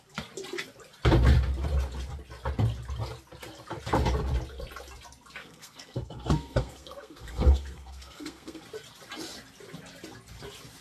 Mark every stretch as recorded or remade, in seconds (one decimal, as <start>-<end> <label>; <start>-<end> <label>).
0.0-5.4 recorded; 5.4-8.6 remade; 8.6-10.8 recorded